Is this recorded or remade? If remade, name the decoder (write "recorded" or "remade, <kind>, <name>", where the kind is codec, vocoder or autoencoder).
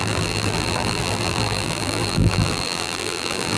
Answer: remade, vocoder, BigVGAN v2